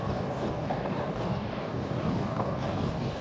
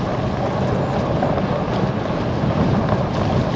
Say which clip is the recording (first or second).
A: second